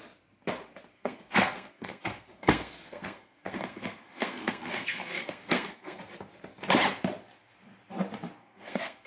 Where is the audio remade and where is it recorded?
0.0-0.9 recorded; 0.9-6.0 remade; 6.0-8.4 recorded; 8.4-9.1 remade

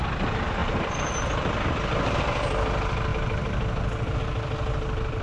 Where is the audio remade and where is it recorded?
0.0-0.6 recorded; 0.6-2.2 remade; 2.2-3.1 recorded; 3.1-4.2 remade; 4.2-5.2 recorded

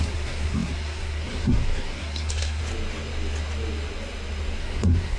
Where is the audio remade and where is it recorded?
0.0-2.6 remade; 2.6-4.6 recorded; 4.6-5.2 remade

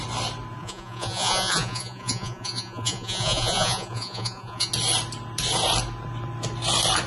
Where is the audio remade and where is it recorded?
0.0-0.6 recorded; 0.6-4.7 remade; 4.7-7.1 recorded

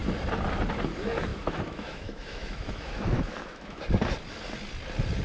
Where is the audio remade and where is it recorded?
0.0-1.3 recorded; 1.3-3.8 remade; 3.8-5.2 recorded

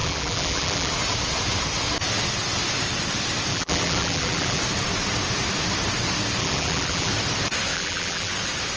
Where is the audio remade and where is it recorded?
0.0-0.9 remade; 0.9-3.5 recorded; 3.5-4.6 remade; 4.6-6.4 recorded; 6.4-7.1 remade; 7.1-7.7 recorded; 7.7-8.3 remade; 8.3-8.8 recorded

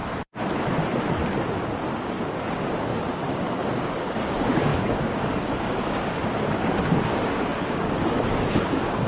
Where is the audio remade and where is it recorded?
0.0-1.9 recorded; 1.9-9.1 remade

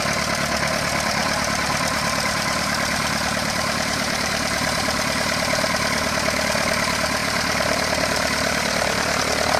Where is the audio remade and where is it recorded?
0.0-1.2 recorded; 1.2-5.7 remade; 5.7-7.2 recorded; 7.2-9.2 remade; 9.2-9.6 recorded